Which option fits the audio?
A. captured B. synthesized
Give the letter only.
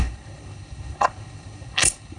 B